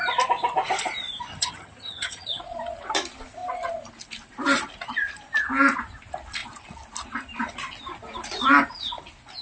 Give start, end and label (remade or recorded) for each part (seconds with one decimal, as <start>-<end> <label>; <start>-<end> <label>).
0.0-1.3 recorded; 1.3-2.4 remade; 2.4-9.4 recorded